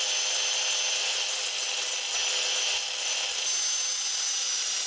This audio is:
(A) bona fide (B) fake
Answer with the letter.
A